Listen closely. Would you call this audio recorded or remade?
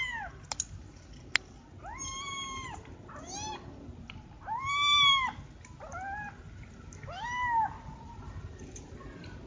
recorded